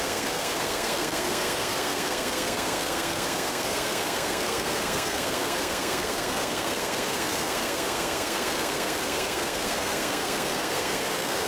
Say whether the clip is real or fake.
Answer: fake